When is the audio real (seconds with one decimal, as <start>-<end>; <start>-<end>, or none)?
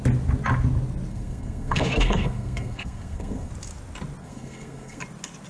0.0-1.1; 3.5-4.2; 5.0-5.5